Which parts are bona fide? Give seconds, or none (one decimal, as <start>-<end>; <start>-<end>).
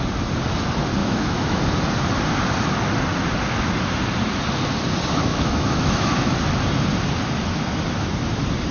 0.0-1.0; 1.6-5.3; 6.3-8.7